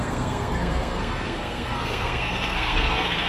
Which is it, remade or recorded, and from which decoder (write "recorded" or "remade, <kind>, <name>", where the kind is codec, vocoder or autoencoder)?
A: remade, codec, SNAC